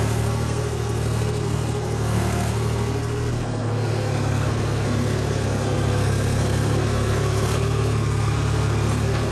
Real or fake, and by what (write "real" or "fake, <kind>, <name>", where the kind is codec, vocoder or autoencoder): fake, codec, SNAC